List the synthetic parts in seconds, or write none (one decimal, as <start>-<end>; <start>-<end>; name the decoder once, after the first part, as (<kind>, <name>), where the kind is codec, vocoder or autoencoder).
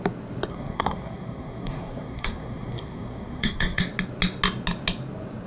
0.5-3.8 (codec, SNAC)